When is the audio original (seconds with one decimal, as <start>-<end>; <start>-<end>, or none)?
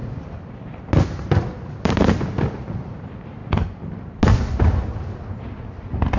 0.0-6.2